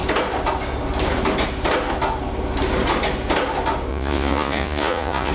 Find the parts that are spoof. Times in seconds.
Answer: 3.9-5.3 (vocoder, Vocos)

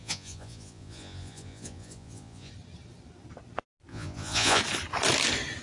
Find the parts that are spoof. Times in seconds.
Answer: 0.0-2.5 (vocoder, Vocos); 3.9-4.6

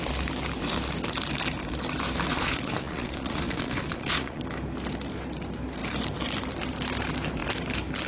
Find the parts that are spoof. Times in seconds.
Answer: 2.3-4.4 (vocoder, Vocos)

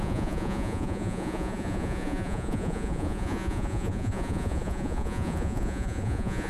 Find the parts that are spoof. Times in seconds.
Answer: 0.0-6.5 (vocoder, Vocos)

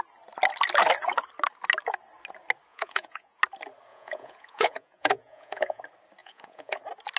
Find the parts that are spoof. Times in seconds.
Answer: 2.7-3.4 (vocoder, Vocos); 3.9-5.8; 6.2-6.8

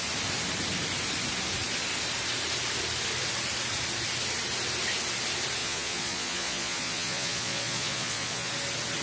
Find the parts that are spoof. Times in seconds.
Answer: 5.6-8.5 (vocoder, Vocos)

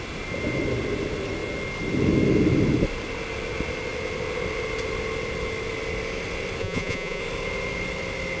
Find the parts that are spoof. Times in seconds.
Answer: 6.6-7.2 (vocoder, Vocos)

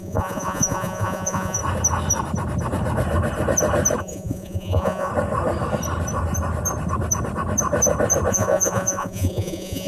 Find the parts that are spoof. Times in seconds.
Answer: 0.0-1.6 (vocoder, Vocos); 4.0-5.1; 8.3-9.9